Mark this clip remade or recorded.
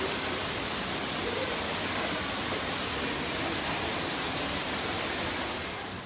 recorded